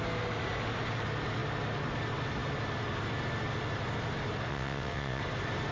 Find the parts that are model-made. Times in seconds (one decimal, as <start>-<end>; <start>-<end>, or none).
4.5-5.2